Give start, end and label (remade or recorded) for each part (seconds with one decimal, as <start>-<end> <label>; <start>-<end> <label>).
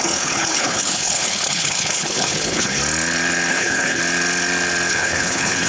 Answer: 0.0-2.8 remade; 2.8-3.5 recorded; 3.5-4.0 remade; 4.0-4.9 recorded; 4.9-5.7 remade